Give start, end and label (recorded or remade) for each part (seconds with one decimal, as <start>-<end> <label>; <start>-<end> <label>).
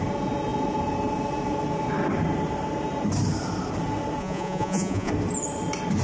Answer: 0.0-4.2 recorded; 4.2-5.1 remade; 5.1-6.0 recorded